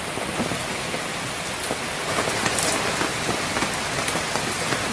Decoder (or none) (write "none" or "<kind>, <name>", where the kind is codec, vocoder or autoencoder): vocoder, BigVGAN v2